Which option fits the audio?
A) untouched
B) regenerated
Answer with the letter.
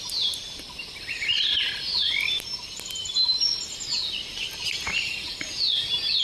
A